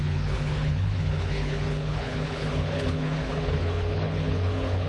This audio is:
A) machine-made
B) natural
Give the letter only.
A